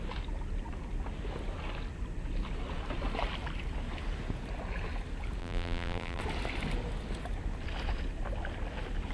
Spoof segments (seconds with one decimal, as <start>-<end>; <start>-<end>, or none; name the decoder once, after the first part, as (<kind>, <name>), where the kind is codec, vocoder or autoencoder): 5.4-6.2 (vocoder, BigVGAN v2)